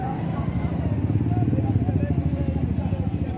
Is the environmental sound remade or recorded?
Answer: recorded